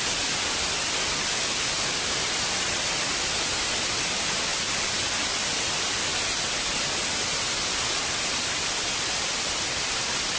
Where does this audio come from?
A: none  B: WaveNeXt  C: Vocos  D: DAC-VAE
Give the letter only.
A